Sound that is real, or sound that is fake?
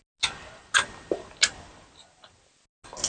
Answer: real